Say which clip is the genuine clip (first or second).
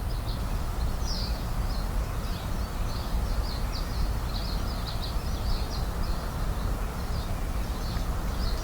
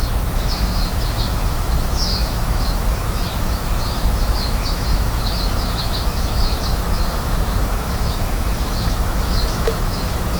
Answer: first